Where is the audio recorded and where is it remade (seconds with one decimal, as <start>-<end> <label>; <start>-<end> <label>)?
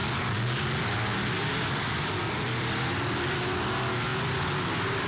0.0-1.4 recorded; 1.4-3.0 remade; 3.0-4.1 recorded; 4.1-5.1 remade